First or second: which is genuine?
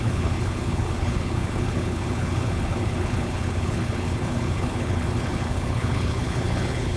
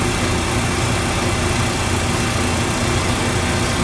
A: second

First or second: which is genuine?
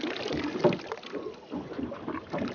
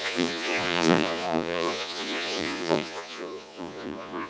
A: first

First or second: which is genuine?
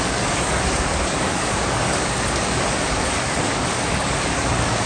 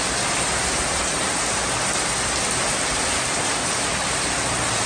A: second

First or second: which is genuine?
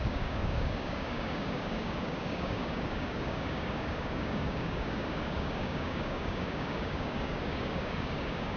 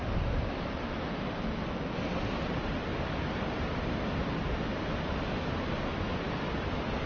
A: second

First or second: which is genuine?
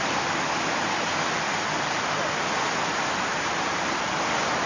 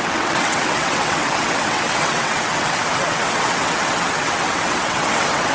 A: first